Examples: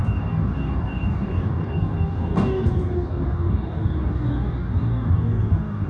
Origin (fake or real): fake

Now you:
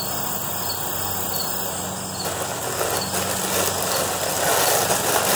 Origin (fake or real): real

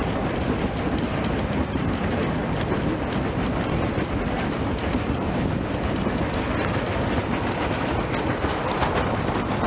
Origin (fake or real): real